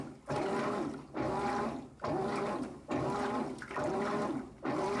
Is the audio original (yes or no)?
yes